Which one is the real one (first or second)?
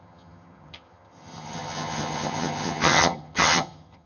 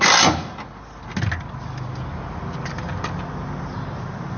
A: second